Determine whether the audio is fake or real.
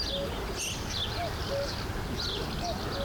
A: real